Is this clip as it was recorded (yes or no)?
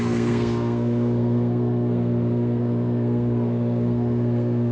no